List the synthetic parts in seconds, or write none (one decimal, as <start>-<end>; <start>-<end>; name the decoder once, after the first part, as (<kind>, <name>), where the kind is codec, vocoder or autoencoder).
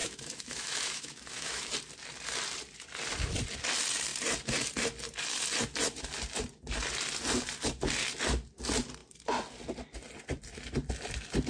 0.0-1.7 (autoencoder, DAC-VAE)